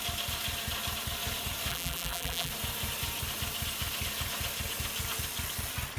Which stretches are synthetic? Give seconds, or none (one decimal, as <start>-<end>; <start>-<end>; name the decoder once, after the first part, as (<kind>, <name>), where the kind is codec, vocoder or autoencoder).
1.7-2.5 (vocoder, BigVGAN v2)